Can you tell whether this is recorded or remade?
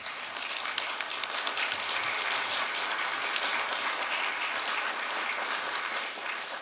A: recorded